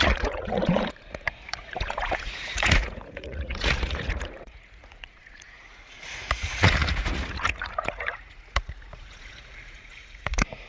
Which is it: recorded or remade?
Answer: remade